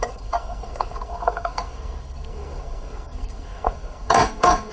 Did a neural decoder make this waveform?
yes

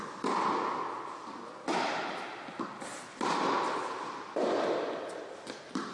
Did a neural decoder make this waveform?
no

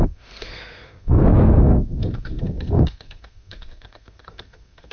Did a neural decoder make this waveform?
yes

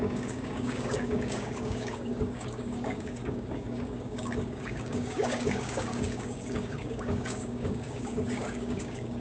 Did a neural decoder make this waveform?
yes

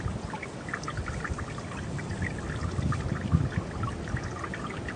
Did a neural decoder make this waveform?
no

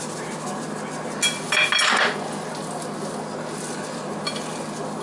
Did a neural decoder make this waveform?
no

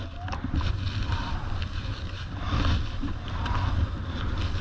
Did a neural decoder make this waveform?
no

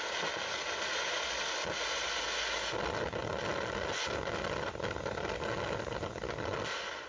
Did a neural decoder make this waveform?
no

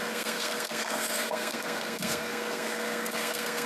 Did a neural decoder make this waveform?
yes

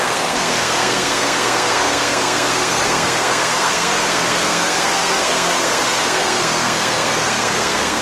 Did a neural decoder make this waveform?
yes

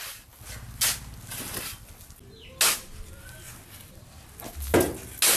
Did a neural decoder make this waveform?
no